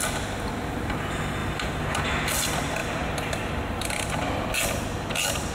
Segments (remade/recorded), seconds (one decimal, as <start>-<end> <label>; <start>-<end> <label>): 0.0-1.4 recorded; 1.4-2.0 remade; 2.0-2.8 recorded; 2.8-4.2 remade; 4.2-5.5 recorded